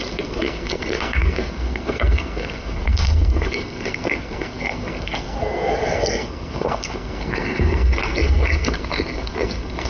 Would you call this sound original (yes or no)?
no